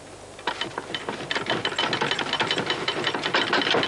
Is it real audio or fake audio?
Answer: real